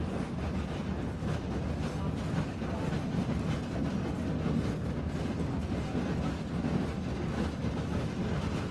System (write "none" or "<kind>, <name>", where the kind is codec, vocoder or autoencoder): none